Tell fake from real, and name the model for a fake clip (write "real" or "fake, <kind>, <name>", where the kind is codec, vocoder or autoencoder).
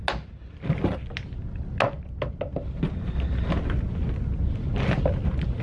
real